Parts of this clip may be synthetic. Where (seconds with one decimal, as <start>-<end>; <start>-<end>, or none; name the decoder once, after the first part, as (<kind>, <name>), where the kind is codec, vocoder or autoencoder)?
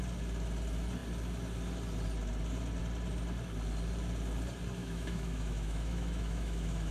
4.8-6.9 (autoencoder, DAC-VAE)